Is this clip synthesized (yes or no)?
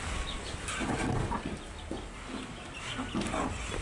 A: no